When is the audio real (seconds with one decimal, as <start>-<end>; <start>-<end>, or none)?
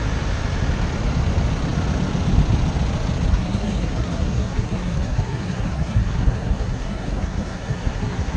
0.0-3.3